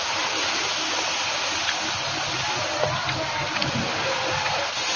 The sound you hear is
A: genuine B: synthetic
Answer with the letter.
A